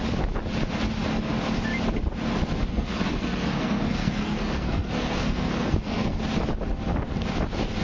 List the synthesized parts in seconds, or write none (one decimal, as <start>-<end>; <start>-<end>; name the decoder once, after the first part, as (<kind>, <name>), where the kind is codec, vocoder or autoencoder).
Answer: 2.7-6.2 (codec, SNAC)